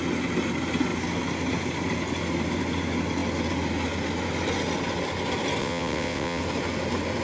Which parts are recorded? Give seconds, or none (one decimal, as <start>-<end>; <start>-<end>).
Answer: 0.0-5.6; 6.4-7.2